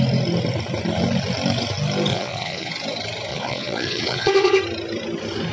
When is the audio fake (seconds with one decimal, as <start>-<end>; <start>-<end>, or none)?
2.1-2.7; 3.3-4.6